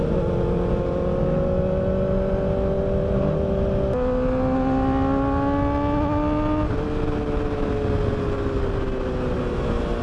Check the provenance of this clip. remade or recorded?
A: recorded